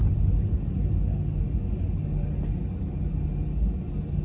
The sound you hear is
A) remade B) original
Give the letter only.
B